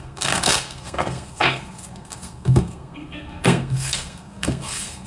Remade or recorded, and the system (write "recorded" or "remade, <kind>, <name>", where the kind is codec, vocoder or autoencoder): remade, codec, SNAC